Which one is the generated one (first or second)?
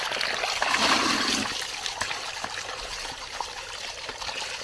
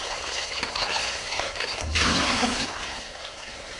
second